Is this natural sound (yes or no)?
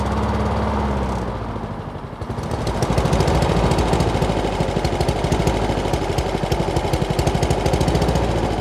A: yes